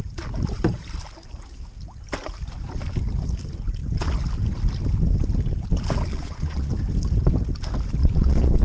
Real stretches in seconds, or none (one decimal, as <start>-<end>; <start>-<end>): 0.0-6.1; 6.7-8.0